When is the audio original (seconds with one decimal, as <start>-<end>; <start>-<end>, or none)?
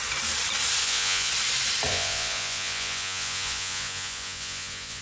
0.0-0.8; 1.3-1.9